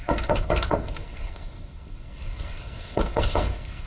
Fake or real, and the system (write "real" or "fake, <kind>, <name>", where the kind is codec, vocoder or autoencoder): fake, codec, SNAC